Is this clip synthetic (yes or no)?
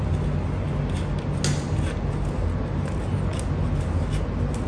no